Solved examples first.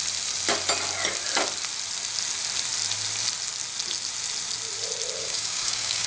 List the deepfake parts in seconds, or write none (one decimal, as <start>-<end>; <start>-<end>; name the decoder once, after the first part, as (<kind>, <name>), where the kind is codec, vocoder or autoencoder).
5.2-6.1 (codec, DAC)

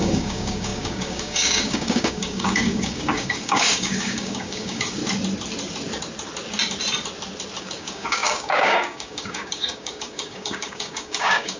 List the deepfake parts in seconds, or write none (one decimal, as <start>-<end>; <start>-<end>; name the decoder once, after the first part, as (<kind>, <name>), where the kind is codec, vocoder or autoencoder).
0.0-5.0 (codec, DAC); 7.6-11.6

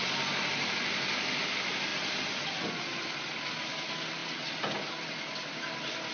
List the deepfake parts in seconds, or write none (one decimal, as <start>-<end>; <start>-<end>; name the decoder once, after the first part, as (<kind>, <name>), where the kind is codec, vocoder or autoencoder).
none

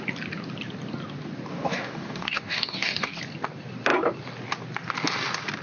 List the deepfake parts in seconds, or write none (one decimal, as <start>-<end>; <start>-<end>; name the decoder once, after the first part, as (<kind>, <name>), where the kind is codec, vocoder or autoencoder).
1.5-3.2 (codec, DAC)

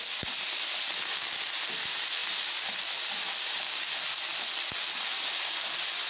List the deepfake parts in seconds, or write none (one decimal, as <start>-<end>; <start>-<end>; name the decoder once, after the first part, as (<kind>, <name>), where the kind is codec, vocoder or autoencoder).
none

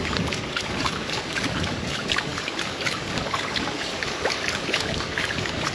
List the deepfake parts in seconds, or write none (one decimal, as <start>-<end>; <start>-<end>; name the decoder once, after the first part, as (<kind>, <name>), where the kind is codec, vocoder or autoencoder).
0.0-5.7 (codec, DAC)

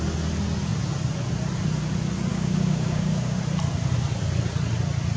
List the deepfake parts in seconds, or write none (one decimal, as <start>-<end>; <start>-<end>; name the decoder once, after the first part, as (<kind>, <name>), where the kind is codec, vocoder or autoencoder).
2.3-3.4 (codec, DAC)

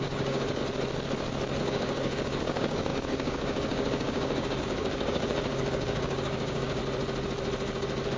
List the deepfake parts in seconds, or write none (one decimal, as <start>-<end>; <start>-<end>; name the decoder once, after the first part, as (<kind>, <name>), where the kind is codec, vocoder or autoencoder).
0.0-0.6 (codec, DAC); 1.6-6.8